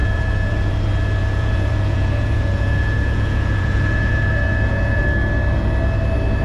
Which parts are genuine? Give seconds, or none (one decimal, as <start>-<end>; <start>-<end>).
0.7-1.2; 5.0-6.4